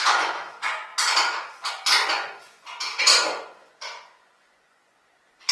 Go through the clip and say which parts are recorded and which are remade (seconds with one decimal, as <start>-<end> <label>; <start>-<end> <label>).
0.0-0.9 remade; 0.9-1.7 recorded; 1.7-5.5 remade